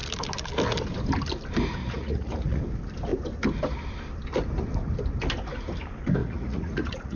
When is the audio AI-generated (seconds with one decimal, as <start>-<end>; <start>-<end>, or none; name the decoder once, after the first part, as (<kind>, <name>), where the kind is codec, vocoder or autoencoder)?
1.8-2.6 (vocoder, Vocos); 6.2-7.2